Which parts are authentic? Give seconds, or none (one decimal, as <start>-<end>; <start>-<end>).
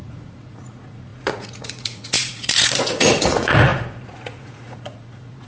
none